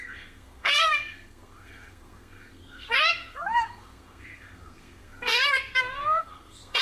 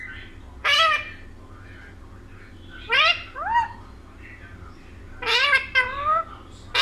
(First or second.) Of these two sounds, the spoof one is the first